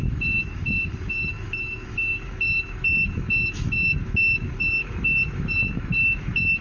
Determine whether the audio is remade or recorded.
remade